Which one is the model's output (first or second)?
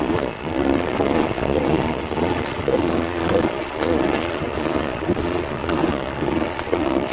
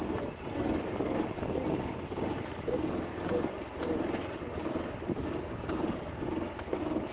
first